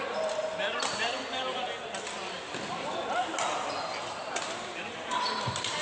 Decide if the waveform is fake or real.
real